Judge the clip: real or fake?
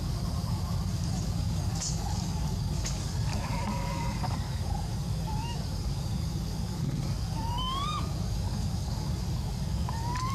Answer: fake